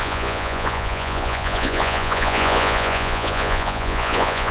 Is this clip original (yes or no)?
no